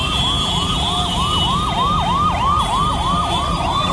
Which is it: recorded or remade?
recorded